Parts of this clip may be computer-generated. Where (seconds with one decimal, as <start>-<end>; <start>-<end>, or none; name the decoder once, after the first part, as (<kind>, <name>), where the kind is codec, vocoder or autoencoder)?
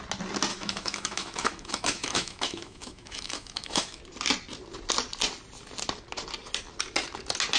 0.5-4.0 (autoencoder, DAC-VAE)